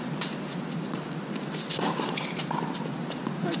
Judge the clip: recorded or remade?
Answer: recorded